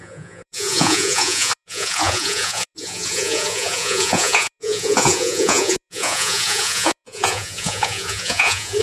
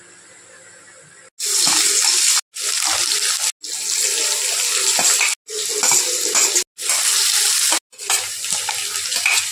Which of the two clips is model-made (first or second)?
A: first